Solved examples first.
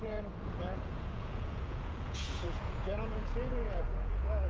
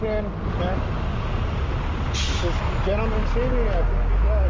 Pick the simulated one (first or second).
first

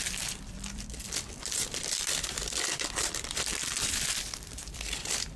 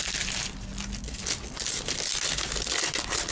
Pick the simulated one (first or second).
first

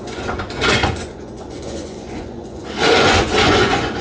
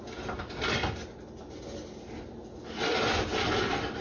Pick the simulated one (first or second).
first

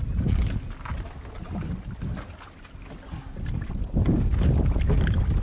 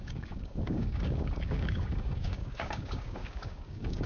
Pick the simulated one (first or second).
second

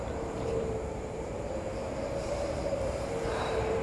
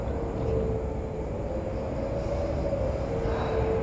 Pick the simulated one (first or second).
first